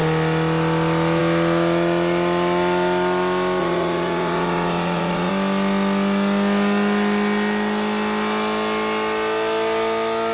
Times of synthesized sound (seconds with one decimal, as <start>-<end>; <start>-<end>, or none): 3.6-5.3